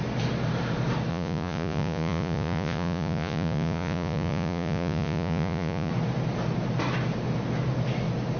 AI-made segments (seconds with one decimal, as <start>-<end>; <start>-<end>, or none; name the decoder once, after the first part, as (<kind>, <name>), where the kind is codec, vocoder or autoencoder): 1.1-5.9 (vocoder, Vocos)